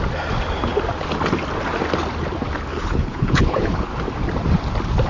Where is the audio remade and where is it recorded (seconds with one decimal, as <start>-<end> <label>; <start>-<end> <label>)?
0.0-2.7 recorded; 2.7-3.9 remade; 3.9-5.1 recorded